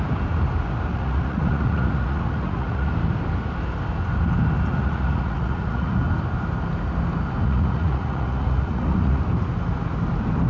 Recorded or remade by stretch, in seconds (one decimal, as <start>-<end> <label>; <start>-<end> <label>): 0.0-0.9 recorded; 0.9-2.9 remade; 2.9-4.8 recorded; 4.8-5.9 remade; 5.9-7.4 recorded; 7.4-9.2 remade; 9.2-10.5 recorded